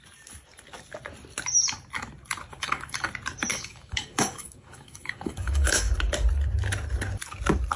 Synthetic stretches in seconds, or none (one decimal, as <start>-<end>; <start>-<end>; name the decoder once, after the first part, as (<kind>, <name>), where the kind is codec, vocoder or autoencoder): 2.5-3.1 (codec, DAC); 3.5-5.9